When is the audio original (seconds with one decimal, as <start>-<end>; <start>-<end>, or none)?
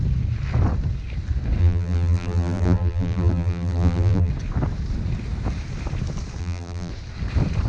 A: 0.0-1.6; 4.3-6.4; 6.9-7.7